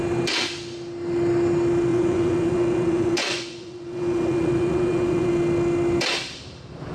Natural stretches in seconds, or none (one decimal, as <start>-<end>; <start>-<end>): 0.0-1.9; 5.3-6.9